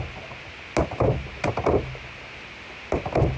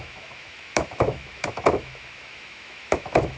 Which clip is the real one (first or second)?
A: first